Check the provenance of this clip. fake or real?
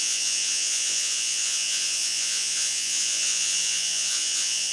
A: fake